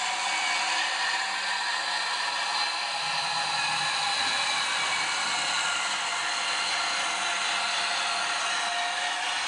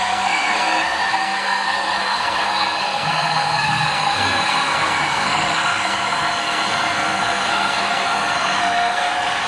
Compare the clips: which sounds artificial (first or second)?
second